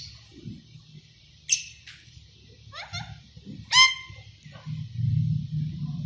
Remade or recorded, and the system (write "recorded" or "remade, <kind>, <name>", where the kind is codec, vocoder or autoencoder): recorded